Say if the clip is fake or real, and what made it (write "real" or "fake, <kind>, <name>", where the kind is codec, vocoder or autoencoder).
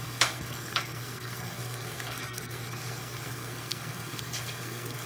fake, codec, SNAC